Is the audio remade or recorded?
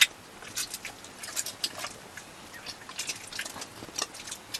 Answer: recorded